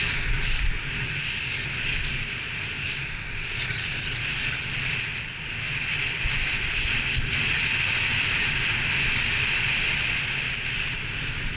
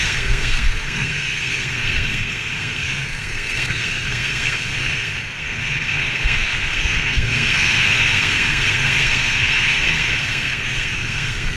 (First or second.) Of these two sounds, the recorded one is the first